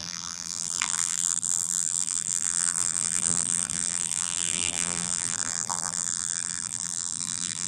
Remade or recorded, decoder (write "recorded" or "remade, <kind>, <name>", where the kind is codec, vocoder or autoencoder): remade, vocoder, BigVGAN v2